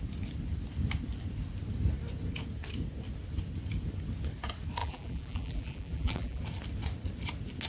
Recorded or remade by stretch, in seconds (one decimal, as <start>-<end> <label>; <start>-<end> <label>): 0.0-4.8 recorded; 4.8-6.4 remade; 6.4-7.7 recorded